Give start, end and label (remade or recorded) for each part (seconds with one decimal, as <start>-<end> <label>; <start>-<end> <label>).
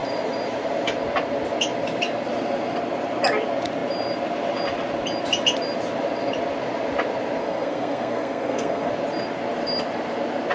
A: 0.0-7.4 recorded; 7.4-8.9 remade; 8.9-10.5 recorded